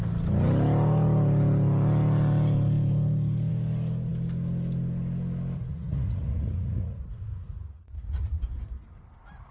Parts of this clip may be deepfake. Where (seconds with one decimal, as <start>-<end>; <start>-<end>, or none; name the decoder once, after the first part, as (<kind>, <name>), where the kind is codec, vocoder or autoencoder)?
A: 5.7-8.4 (vocoder, Vocos)